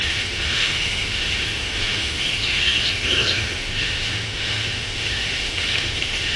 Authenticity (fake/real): fake